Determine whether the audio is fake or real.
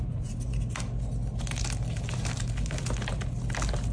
real